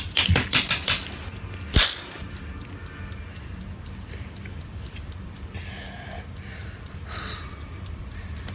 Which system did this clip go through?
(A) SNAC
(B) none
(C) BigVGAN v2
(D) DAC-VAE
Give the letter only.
C